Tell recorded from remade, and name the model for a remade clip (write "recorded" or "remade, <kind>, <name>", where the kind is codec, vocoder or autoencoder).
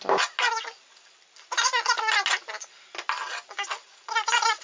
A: recorded